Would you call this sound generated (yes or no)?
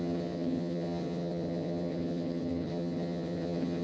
yes